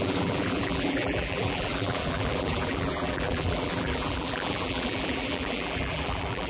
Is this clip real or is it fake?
fake